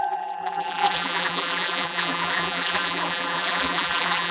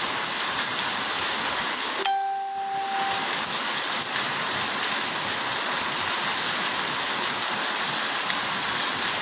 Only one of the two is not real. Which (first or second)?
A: first